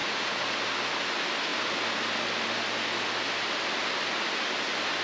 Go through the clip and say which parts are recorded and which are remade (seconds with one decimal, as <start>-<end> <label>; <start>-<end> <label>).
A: 0.0-0.6 remade; 0.6-5.0 recorded